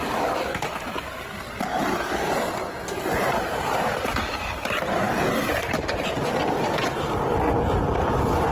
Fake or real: real